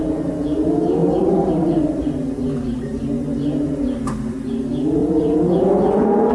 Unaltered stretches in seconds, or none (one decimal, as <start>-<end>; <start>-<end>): 0.0-1.0; 2.0-5.0; 5.5-6.3